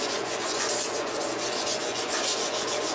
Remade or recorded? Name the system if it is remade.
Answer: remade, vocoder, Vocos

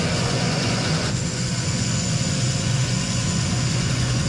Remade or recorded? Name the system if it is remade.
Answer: remade, vocoder, Vocos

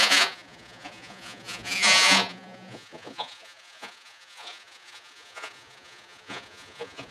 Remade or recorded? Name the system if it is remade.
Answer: remade, vocoder, Vocos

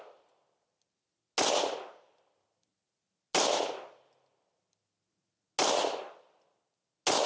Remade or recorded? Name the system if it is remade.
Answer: recorded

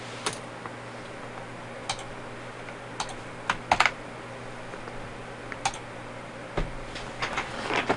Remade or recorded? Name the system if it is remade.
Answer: recorded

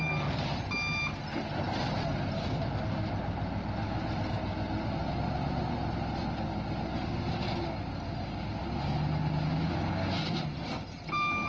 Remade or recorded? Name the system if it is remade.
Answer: recorded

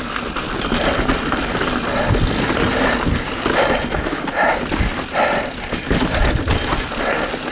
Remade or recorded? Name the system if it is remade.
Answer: recorded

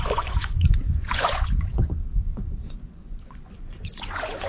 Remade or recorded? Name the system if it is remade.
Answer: remade, vocoder, Vocos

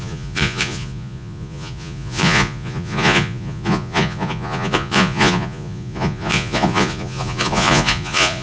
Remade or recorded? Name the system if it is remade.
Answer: remade, vocoder, Vocos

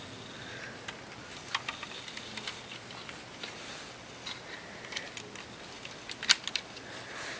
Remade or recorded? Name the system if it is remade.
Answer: recorded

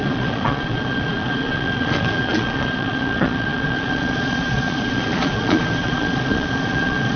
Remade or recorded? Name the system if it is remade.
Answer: remade, vocoder, Vocos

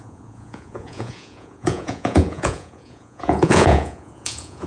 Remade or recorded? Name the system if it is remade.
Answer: remade, vocoder, Vocos